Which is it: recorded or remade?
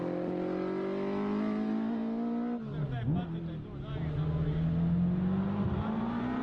recorded